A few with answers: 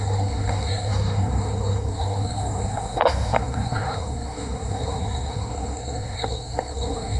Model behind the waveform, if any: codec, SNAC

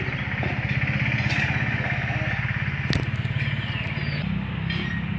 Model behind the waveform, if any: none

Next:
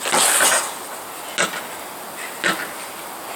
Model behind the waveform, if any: none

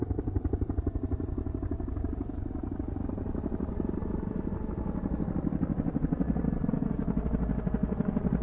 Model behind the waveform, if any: none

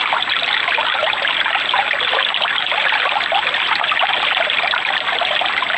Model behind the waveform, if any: none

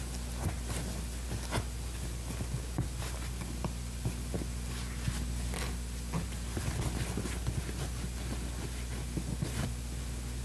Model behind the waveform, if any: none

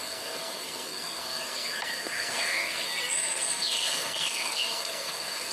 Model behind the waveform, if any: codec, SNAC